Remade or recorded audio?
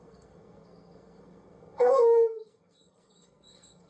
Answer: remade